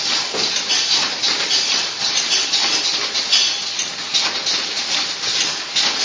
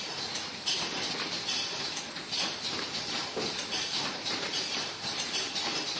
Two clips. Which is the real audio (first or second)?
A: first